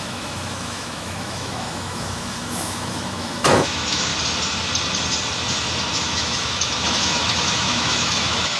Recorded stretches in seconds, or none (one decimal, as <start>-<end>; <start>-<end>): 4.1-5.9